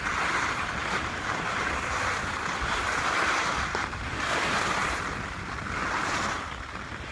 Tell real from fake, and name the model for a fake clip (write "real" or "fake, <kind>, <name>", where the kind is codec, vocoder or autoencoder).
real